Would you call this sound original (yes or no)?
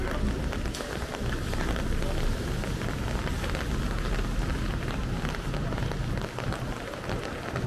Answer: yes